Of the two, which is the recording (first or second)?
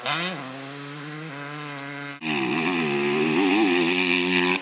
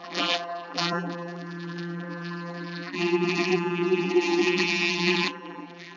first